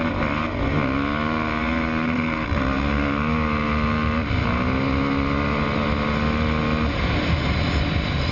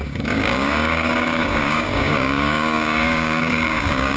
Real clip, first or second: first